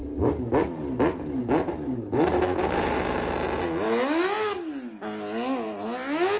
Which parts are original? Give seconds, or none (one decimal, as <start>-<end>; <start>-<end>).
0.6-1.4; 3.3-6.4